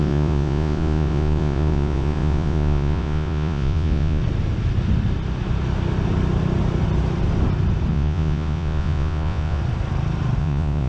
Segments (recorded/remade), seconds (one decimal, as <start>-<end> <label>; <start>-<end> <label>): 0.0-4.2 remade; 4.2-7.9 recorded; 7.9-9.6 remade; 9.6-10.4 recorded; 10.4-10.9 remade